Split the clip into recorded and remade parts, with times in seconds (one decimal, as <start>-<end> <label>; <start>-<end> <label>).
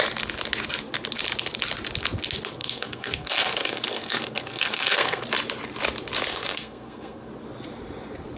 0.0-2.6 recorded; 2.6-5.2 remade; 5.2-6.3 recorded; 6.3-7.3 remade; 7.3-8.4 recorded